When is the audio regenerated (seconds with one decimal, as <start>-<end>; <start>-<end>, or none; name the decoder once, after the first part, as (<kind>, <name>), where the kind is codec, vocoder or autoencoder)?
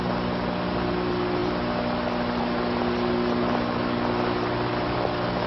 none